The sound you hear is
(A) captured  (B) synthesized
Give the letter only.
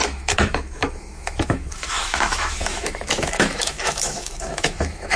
B